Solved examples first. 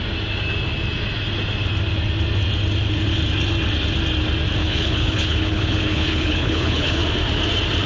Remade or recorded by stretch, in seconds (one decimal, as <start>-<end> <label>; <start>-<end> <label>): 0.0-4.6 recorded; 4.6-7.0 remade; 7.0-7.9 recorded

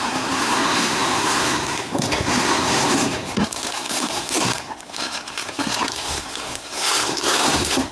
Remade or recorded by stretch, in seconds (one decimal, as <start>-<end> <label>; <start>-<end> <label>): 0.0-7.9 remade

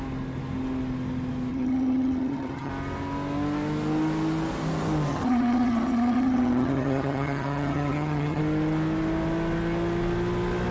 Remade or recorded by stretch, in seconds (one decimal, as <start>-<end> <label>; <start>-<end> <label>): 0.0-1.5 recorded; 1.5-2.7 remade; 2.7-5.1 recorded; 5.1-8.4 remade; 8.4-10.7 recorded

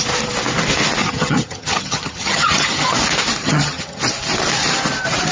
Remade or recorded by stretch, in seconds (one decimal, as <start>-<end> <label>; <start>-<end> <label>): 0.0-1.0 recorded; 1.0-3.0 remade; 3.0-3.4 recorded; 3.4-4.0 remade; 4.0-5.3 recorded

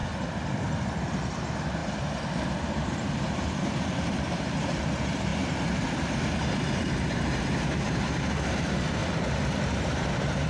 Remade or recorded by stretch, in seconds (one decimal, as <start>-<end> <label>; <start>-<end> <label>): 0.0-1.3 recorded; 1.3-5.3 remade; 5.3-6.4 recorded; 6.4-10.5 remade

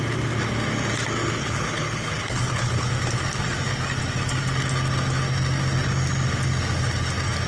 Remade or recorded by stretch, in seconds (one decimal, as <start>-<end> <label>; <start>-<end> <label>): 0.0-1.4 recorded; 1.4-2.9 remade; 2.9-7.5 recorded

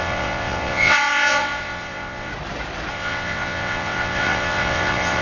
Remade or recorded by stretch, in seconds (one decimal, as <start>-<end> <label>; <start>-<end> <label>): 0.0-2.3 remade; 2.3-2.9 recorded; 2.9-5.2 remade

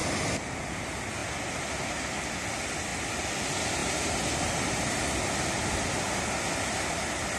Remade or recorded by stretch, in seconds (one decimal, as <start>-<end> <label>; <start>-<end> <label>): 0.0-7.4 recorded